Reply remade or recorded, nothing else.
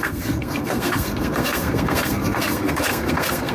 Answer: remade